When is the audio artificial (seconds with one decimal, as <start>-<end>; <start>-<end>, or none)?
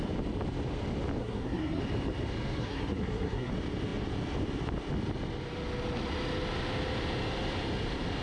1.2-1.8; 2.6-3.5